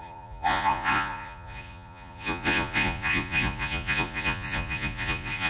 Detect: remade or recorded remade